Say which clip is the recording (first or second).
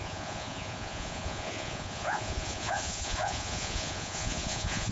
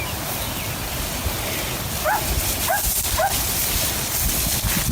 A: second